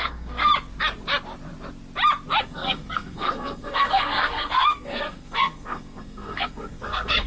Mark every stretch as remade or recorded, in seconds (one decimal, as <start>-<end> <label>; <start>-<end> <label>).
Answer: 0.0-0.5 remade; 0.5-2.4 recorded; 2.4-7.3 remade